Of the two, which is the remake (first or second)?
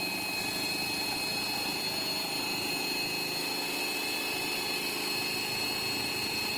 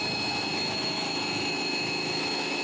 second